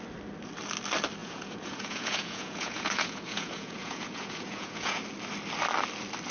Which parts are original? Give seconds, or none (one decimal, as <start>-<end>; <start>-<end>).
0.0-1.2; 5.0-6.3